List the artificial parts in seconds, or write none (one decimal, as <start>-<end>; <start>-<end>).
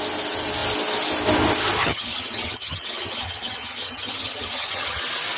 1.8-5.0